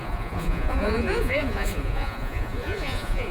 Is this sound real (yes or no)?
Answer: no